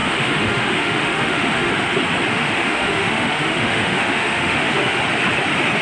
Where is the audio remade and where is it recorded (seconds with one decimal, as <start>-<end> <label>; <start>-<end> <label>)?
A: 0.0-1.7 remade; 1.7-2.3 recorded; 2.3-5.0 remade; 5.0-5.8 recorded